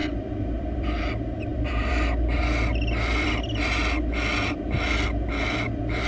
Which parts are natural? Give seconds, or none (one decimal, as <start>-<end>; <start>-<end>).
1.0-1.5; 3.3-6.1